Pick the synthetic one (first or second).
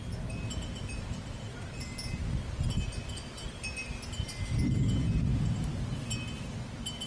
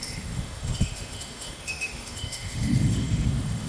second